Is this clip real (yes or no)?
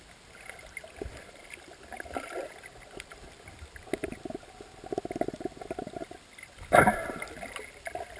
yes